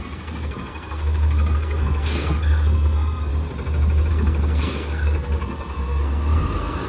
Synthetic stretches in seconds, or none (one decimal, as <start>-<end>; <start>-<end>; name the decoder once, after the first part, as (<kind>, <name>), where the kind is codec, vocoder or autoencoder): 0.0-3.3 (codec, SNAC); 4.1-6.9